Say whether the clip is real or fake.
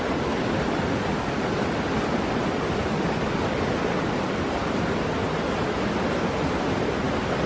real